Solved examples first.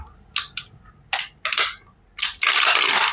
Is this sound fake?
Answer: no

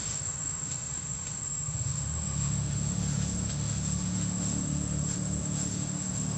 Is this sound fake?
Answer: yes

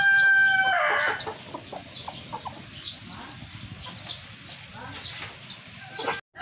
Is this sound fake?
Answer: no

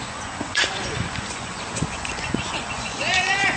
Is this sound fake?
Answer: yes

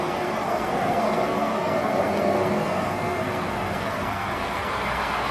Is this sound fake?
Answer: yes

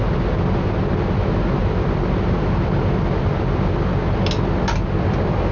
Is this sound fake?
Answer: no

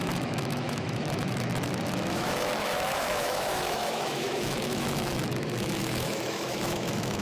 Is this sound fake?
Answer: yes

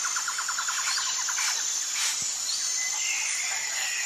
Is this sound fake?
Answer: no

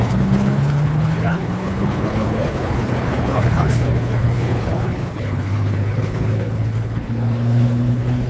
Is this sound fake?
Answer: yes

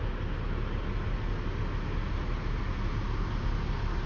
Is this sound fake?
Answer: no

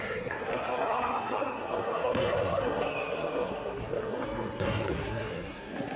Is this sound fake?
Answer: yes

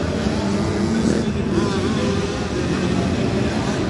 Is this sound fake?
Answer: no